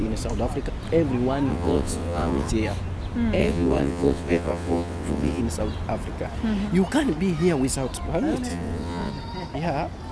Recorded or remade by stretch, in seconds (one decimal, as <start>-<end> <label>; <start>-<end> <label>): 0.0-1.5 recorded; 1.5-2.5 remade; 2.5-3.4 recorded; 3.4-5.4 remade; 5.4-8.5 recorded; 8.5-9.1 remade; 9.1-10.1 recorded